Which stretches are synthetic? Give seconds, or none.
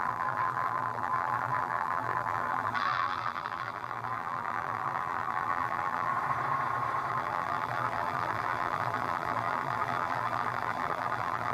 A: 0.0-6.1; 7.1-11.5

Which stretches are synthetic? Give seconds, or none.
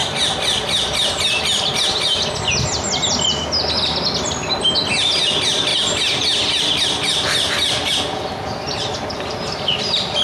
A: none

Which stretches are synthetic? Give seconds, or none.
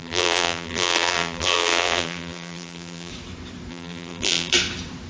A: 0.0-3.1; 3.7-4.5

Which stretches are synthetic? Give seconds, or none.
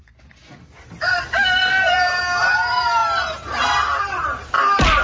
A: none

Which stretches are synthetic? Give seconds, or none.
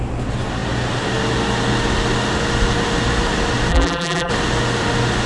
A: 3.7-4.3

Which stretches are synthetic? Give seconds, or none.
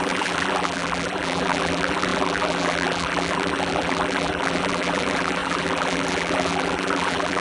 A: 0.0-7.4